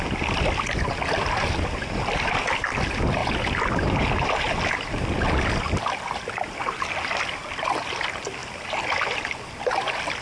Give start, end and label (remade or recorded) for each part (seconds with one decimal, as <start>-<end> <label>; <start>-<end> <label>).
0.0-10.2 recorded